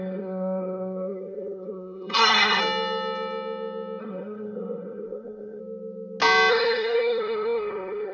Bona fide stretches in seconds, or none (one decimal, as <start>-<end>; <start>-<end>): 2.6-4.0; 5.6-6.5